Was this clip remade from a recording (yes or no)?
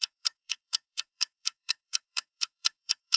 yes